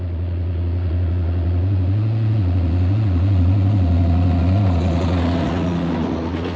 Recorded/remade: remade